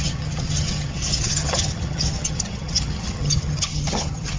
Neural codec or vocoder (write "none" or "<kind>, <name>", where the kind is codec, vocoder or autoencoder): vocoder, HiFi-GAN